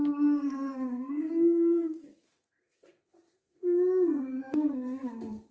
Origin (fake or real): fake